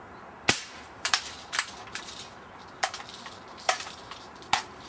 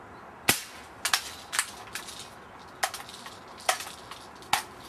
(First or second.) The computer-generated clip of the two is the first